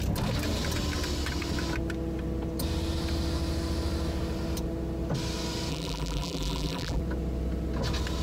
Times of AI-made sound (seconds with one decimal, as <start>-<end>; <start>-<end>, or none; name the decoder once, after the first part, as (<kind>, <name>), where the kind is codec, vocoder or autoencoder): 5.7-7.0 (vocoder, BigVGAN v2)